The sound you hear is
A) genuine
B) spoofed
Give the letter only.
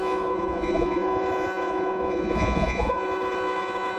B